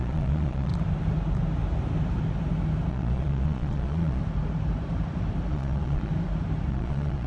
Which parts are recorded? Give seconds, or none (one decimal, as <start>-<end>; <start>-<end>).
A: 0.7-2.9; 4.2-5.5; 6.1-6.7